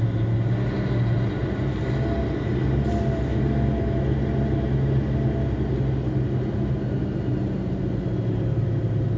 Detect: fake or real real